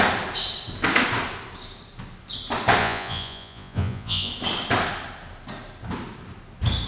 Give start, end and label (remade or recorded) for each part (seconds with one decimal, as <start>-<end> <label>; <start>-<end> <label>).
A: 0.0-2.8 recorded; 2.8-4.3 remade; 4.3-6.9 recorded